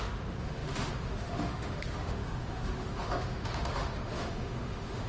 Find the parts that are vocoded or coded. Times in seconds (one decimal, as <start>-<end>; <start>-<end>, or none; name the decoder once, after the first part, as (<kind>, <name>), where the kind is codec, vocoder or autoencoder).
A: 0.0-5.1 (autoencoder, DAC-VAE)